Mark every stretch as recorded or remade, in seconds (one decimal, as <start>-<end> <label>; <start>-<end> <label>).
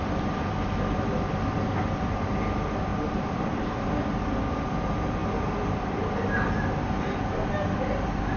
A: 0.0-2.9 recorded; 2.9-4.4 remade; 4.4-8.4 recorded